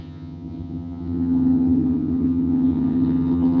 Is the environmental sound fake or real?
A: fake